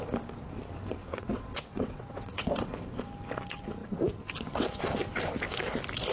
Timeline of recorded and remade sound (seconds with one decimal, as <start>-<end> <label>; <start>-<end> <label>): 0.0-1.0 recorded; 1.0-2.5 remade; 2.5-6.1 recorded